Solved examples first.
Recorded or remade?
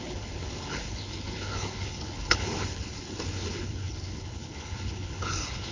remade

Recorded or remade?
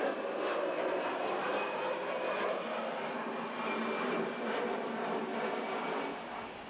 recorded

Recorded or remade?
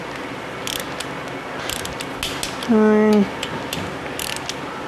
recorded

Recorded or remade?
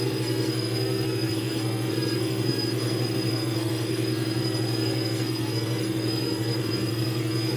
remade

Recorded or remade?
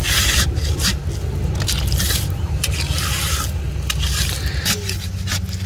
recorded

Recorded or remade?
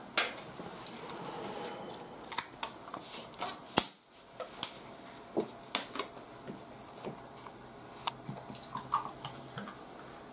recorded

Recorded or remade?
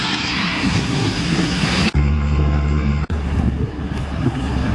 remade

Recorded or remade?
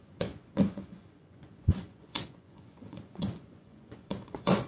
remade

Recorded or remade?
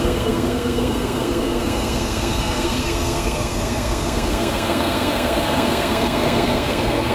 remade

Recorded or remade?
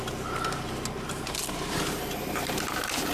recorded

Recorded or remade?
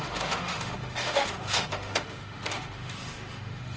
remade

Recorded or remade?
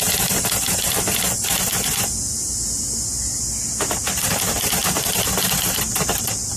recorded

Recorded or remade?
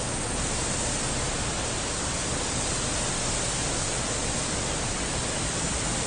recorded